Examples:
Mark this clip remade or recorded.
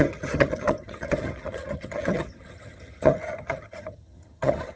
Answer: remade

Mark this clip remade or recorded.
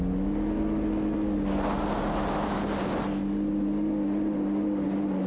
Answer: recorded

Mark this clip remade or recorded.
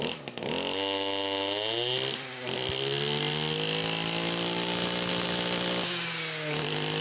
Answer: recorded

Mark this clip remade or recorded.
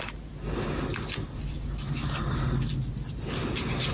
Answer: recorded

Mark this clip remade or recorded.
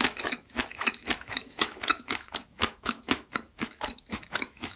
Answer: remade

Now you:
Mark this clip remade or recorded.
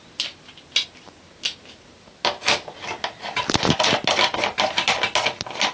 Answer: recorded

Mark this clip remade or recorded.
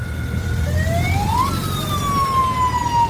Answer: recorded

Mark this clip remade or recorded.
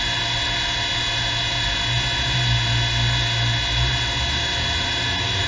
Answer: recorded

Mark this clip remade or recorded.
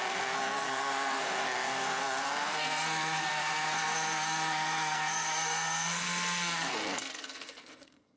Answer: remade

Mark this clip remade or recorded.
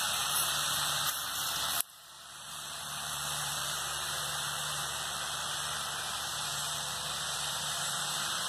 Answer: remade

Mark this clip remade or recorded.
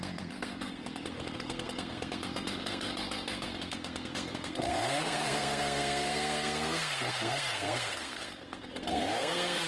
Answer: remade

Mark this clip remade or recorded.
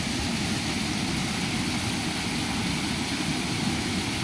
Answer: recorded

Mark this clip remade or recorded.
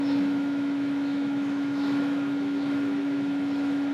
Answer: remade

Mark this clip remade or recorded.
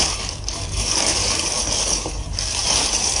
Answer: remade